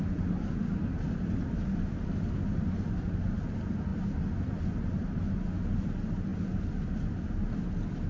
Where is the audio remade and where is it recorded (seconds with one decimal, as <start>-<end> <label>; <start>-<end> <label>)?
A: 0.0-8.1 recorded